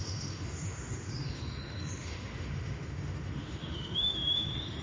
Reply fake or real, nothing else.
fake